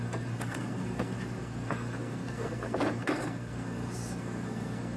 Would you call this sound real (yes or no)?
no